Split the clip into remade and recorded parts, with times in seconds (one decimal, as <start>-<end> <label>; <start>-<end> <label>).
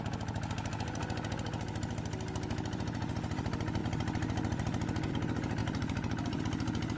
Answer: 0.0-5.6 recorded; 5.6-6.4 remade; 6.4-7.0 recorded